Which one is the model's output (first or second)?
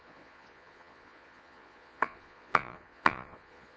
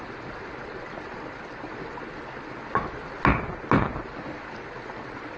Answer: first